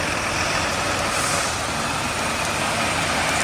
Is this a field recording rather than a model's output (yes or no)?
yes